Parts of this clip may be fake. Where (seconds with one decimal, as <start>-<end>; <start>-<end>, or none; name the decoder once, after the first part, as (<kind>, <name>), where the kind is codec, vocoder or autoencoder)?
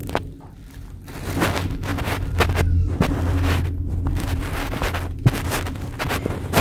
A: 0.0-1.0 (vocoder, BigVGAN v2); 1.9-5.8